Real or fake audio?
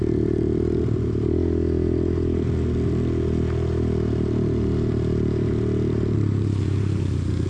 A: real